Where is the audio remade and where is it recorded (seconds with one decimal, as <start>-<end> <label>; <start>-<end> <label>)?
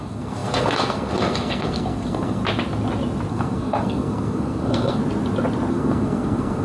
0.0-2.4 remade; 2.4-3.3 recorded; 3.3-5.0 remade; 5.0-5.7 recorded; 5.7-6.6 remade